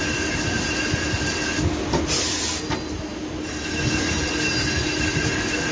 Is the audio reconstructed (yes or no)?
no